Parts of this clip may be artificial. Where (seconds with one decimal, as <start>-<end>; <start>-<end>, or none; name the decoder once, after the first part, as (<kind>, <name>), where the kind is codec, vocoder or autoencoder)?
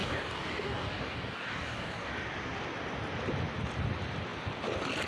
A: 0.0-2.1 (codec, DAC)